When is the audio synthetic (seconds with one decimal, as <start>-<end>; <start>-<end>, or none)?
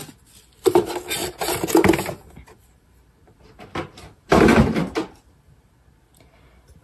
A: none